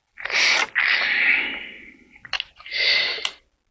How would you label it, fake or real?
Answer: real